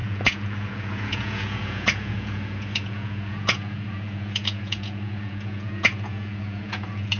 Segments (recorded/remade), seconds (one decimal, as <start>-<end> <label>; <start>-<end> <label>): 0.0-7.2 remade